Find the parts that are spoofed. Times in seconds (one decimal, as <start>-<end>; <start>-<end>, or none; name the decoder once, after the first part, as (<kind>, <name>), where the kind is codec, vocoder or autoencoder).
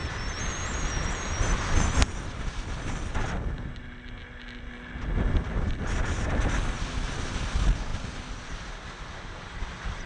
none